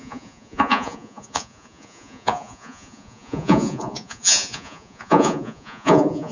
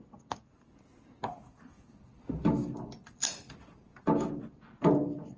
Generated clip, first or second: first